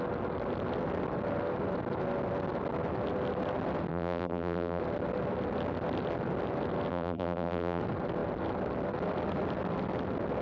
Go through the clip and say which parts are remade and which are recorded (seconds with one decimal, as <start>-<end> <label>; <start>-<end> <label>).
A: 0.0-3.9 recorded; 3.9-4.8 remade; 4.8-6.9 recorded; 6.9-7.8 remade; 7.8-10.4 recorded